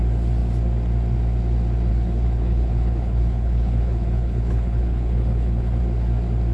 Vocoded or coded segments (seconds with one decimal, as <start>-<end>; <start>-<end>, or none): 1.9-5.8

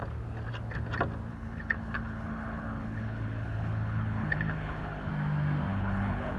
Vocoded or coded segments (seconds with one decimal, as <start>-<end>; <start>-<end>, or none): 1.3-5.1; 5.7-6.4

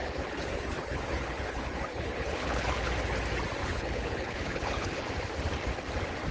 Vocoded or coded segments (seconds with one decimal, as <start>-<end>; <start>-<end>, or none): 0.0-2.9; 3.6-5.0

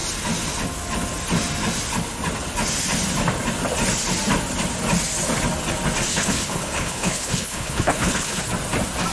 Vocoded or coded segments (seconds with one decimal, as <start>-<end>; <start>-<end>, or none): 6.1-8.4